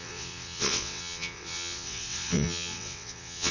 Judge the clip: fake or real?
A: fake